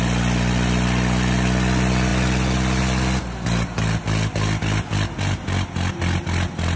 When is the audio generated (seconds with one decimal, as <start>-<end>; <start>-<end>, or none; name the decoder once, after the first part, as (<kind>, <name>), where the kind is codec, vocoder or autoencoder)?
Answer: none

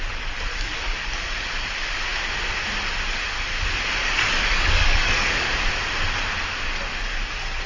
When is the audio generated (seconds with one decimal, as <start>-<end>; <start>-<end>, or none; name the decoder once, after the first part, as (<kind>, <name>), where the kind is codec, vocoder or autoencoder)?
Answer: 0.5-1.1 (codec, DAC); 4.0-5.5

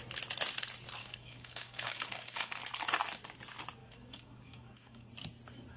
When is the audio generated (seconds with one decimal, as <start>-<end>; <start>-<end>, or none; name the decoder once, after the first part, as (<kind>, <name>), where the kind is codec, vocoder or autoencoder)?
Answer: 1.0-2.6 (codec, DAC); 3.8-5.1

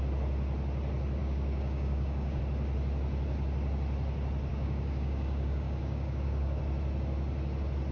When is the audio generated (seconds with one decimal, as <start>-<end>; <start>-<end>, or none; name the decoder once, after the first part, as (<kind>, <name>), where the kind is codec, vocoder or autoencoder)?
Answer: 1.2-2.4 (codec, DAC); 4.5-6.6